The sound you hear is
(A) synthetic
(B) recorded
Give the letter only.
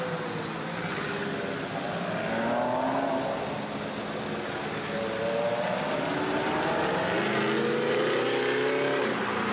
B